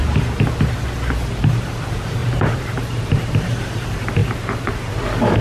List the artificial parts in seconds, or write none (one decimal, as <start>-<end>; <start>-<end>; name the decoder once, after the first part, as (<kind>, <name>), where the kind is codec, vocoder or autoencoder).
2.2-3.5 (vocoder, BigVGAN v2); 4.2-4.9